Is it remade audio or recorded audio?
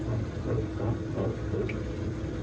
recorded